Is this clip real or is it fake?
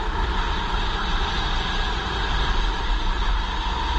real